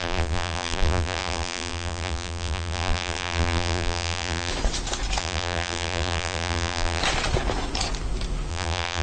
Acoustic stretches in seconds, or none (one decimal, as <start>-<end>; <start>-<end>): 4.5-5.2; 7.0-8.5